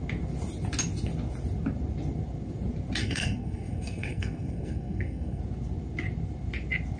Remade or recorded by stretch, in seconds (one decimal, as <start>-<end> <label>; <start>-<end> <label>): 0.0-3.0 recorded; 3.0-5.4 remade; 5.4-7.0 recorded